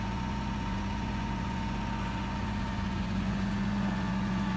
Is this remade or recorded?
remade